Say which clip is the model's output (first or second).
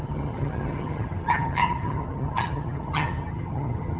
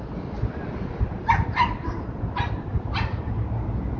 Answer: first